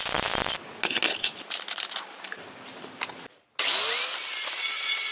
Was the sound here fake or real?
real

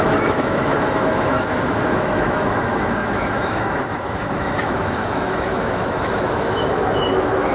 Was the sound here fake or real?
fake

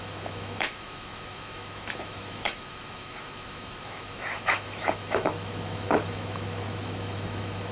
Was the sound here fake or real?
fake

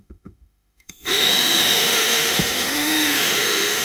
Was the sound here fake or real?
fake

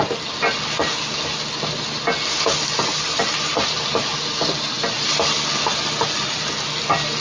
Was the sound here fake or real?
real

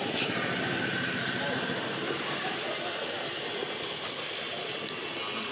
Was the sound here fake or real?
real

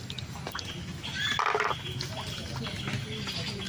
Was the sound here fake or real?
real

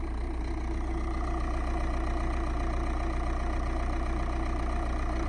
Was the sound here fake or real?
real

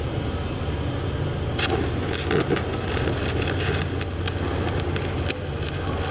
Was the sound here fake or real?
real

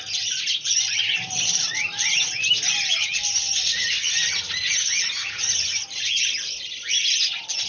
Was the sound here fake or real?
real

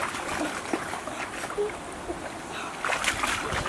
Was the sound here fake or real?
real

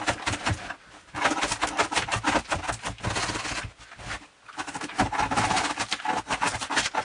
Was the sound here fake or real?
real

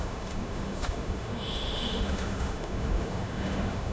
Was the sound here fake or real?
fake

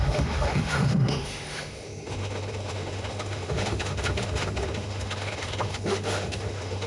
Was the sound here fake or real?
fake